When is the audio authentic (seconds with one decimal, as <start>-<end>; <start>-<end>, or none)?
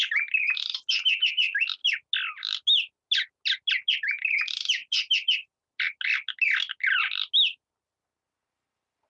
0.0-9.1